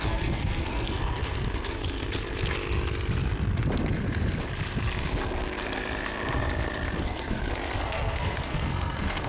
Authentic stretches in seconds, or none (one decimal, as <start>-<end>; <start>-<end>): 1.8-7.0; 7.4-7.9